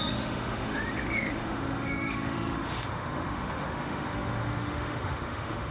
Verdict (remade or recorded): remade